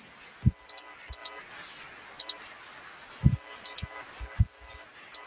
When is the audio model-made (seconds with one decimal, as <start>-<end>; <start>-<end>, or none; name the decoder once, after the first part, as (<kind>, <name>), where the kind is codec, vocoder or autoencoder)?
none